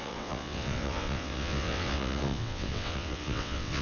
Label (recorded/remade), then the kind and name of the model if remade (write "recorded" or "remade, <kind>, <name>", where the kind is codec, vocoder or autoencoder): remade, vocoder, WaveNeXt